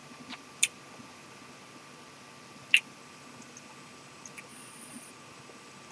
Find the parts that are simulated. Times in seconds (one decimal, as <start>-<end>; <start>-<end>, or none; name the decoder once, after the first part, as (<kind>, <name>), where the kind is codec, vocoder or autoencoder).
4.5-5.1 (vocoder, Vocos)